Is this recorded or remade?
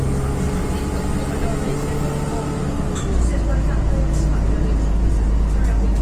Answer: recorded